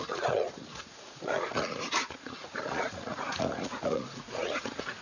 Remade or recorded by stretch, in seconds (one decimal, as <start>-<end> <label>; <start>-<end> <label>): 0.0-5.0 remade